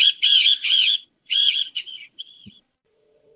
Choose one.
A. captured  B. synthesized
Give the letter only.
B